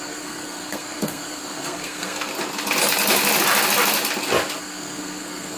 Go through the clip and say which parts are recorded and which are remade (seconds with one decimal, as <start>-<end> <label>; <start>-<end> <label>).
0.0-2.3 remade; 2.3-4.6 recorded; 4.6-5.6 remade